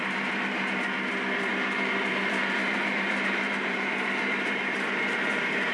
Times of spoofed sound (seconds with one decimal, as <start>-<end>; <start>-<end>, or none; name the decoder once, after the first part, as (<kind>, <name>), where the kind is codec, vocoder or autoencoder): 0.0-5.7 (vocoder, BigVGAN v2)